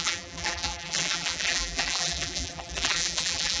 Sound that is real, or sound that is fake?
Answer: fake